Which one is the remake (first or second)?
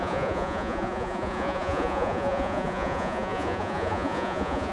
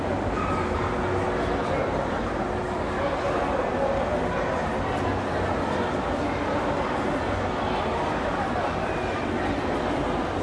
first